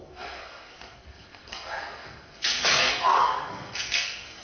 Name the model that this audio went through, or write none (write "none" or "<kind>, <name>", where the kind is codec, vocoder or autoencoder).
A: codec, SNAC